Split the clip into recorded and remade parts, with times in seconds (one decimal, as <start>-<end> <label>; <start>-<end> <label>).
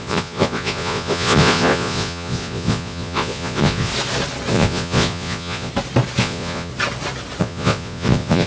0.0-3.9 remade; 3.9-4.5 recorded; 4.5-5.7 remade; 5.7-6.2 recorded; 6.2-6.7 remade; 6.7-7.4 recorded; 7.4-8.5 remade